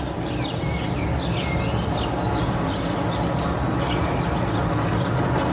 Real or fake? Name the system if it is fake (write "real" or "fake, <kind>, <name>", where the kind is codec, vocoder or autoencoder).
real